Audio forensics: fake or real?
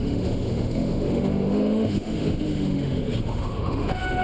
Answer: fake